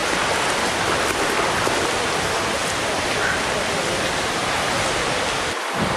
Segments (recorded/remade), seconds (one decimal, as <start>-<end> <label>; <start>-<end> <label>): 0.0-6.0 recorded